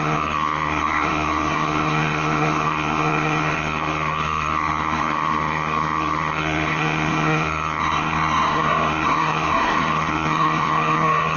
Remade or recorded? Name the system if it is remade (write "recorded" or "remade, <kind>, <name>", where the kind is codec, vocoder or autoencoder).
remade, codec, SNAC